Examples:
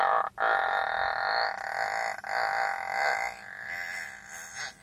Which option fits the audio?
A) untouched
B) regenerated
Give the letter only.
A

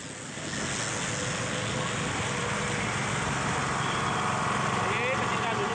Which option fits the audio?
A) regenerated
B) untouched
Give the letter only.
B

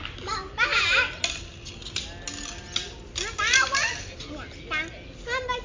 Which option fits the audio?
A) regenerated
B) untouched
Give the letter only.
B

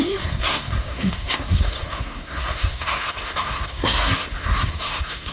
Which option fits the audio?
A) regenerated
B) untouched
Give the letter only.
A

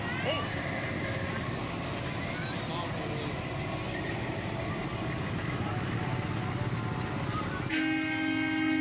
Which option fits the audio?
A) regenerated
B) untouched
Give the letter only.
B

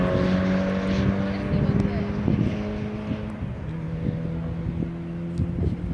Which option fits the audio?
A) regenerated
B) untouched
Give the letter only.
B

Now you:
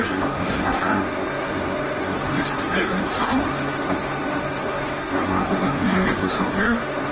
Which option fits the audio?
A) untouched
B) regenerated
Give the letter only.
B